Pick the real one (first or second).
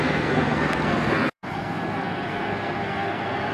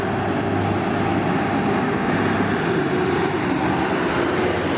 second